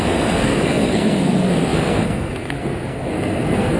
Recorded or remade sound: remade